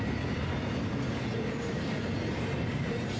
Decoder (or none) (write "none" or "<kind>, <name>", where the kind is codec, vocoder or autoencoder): none